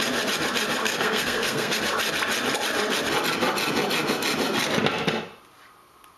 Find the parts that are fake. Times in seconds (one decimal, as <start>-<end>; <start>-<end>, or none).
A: 0.8-1.8